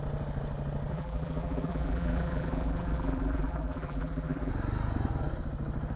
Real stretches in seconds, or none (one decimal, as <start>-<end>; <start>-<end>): 0.0-0.9; 4.5-6.0